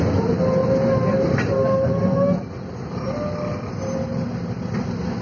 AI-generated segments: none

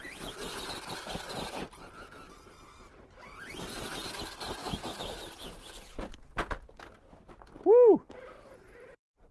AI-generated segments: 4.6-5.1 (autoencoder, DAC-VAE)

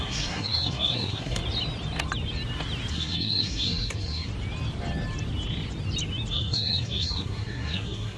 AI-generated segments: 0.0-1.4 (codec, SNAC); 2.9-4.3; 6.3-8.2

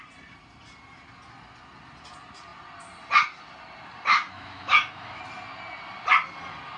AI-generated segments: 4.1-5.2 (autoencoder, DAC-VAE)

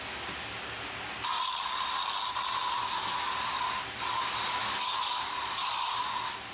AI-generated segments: none

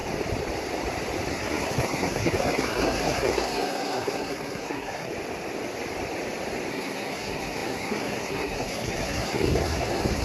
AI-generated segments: 1.3-5.1 (codec, SNAC); 6.7-10.2

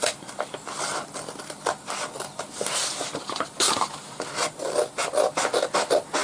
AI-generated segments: none